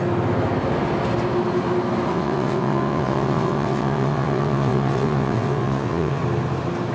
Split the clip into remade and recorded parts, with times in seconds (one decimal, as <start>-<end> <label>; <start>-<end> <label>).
0.0-2.1 recorded; 2.1-6.2 remade; 6.2-6.9 recorded